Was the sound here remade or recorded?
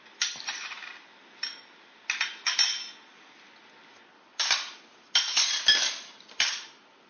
recorded